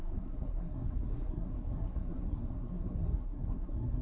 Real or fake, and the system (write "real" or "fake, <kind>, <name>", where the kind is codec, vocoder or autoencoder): fake, codec, SNAC